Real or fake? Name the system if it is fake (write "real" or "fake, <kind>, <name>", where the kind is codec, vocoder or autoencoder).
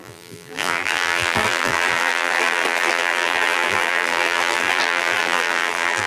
fake, vocoder, BigVGAN v2